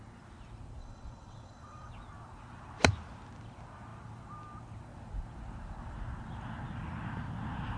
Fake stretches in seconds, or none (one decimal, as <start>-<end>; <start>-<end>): 0.8-1.9